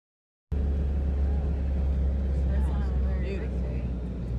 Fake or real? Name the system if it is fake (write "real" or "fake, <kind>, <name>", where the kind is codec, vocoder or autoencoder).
real